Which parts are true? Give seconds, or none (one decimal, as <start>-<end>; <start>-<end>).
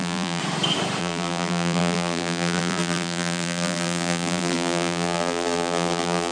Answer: 0.4-1.0